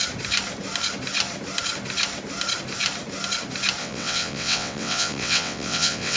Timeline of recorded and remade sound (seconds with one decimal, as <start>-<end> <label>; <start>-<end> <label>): 0.0-3.8 recorded; 3.8-6.2 remade